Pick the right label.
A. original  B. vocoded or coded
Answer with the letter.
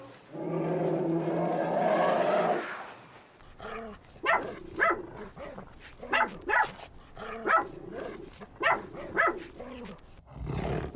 A